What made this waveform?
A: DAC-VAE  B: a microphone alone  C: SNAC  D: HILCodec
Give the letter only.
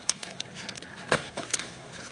C